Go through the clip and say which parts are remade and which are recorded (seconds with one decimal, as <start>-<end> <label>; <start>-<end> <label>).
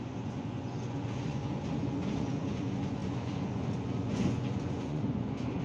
0.0-5.6 remade